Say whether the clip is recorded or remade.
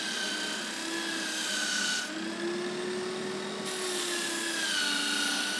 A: recorded